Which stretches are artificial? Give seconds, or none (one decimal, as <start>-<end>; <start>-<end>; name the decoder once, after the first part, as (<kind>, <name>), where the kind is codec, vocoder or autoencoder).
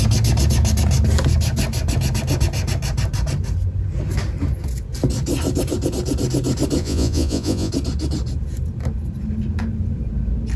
6.8-7.7 (vocoder, Vocos)